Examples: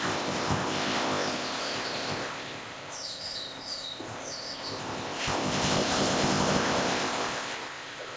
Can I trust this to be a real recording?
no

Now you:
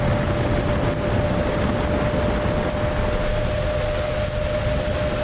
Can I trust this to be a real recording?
yes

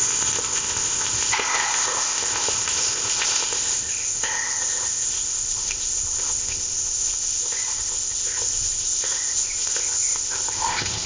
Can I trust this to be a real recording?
no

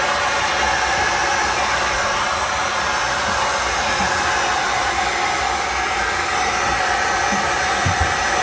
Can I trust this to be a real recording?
yes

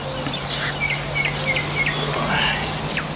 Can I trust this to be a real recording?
yes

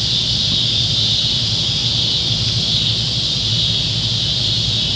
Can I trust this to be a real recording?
yes